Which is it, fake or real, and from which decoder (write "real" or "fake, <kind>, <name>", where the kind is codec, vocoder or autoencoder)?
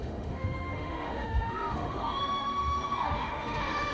fake, autoencoder, DAC-VAE